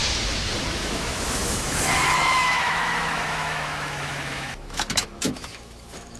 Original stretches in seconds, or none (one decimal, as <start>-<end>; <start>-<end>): 0.0-0.7